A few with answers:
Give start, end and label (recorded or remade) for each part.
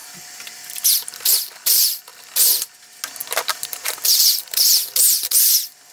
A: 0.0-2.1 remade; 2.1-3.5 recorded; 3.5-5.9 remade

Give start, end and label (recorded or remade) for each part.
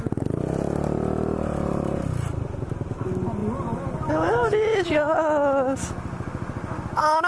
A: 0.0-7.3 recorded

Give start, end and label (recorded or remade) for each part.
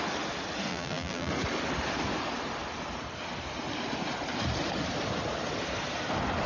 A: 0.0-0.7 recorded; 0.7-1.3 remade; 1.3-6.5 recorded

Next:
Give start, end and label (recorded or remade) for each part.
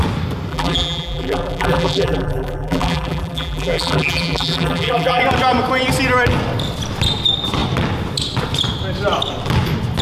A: 0.0-0.5 recorded; 0.5-5.2 remade; 5.2-10.0 recorded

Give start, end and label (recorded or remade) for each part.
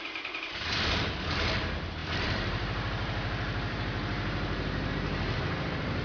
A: 0.0-6.0 remade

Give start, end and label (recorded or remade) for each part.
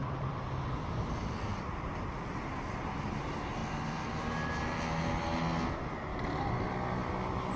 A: 0.0-3.2 remade; 3.2-3.6 recorded; 3.6-4.2 remade; 4.2-6.1 recorded; 6.1-6.7 remade; 6.7-7.6 recorded